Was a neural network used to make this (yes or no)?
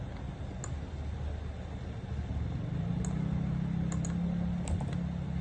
no